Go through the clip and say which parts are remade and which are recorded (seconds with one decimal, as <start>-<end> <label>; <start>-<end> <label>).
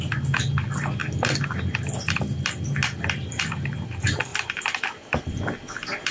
0.0-4.3 recorded; 4.3-6.1 remade